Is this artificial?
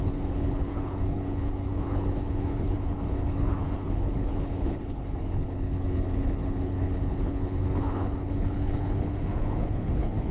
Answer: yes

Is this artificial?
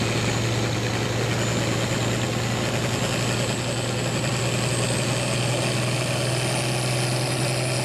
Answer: no